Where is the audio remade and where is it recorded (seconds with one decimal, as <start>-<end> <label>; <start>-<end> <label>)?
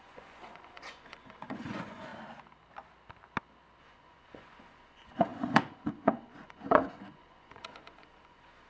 0.0-2.1 remade; 2.1-3.8 recorded; 3.8-8.7 remade